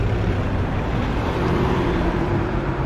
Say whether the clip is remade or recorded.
remade